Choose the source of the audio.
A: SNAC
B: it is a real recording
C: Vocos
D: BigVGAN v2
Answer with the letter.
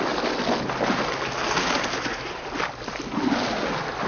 B